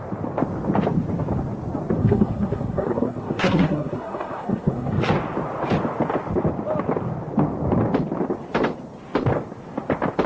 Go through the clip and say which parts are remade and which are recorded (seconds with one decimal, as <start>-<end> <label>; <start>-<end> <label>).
0.0-2.0 recorded; 2.0-5.1 remade; 5.1-10.3 recorded